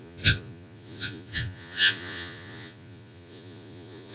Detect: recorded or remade remade